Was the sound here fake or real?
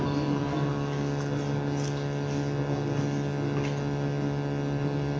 real